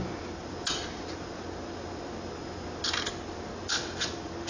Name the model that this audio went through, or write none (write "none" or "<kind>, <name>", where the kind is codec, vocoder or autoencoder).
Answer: none